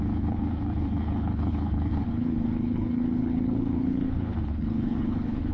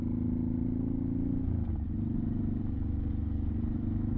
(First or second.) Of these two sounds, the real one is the second